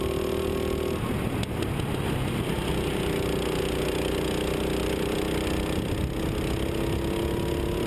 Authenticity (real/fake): real